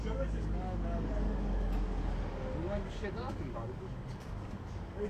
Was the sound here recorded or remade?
remade